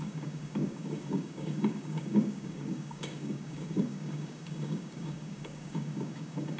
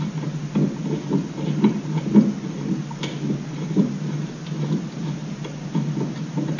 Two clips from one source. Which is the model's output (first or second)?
first